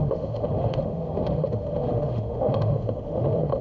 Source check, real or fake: fake